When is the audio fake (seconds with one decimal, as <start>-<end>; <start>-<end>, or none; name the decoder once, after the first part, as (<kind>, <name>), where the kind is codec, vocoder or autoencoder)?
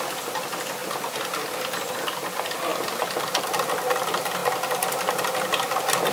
2.7-3.5 (vocoder, BigVGAN v2)